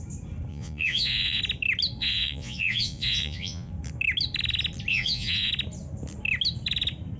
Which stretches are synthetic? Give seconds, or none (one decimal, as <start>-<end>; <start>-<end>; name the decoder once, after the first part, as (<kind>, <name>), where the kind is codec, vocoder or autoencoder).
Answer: 0.5-1.4 (vocoder, Vocos); 2.0-3.7; 4.9-5.5